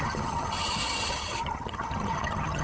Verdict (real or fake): fake